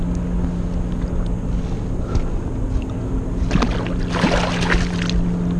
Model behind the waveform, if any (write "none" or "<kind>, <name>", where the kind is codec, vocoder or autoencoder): none